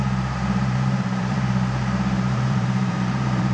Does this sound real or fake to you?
fake